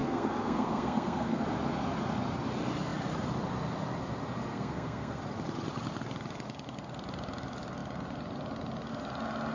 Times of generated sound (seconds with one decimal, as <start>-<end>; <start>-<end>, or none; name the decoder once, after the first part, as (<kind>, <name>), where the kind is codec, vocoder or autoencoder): 0.0-1.4 (codec, SNAC); 4.5-5.2